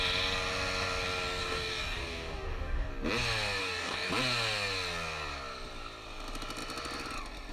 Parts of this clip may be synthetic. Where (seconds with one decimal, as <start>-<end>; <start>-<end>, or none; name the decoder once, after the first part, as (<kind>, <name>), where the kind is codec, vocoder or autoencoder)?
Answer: 1.4-2.9 (codec, DAC); 3.6-4.1